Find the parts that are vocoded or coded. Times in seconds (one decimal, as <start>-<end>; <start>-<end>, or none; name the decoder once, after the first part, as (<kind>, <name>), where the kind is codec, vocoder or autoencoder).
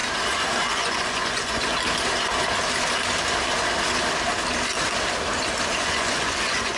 0.6-1.7 (vocoder, Vocos); 5.8-6.8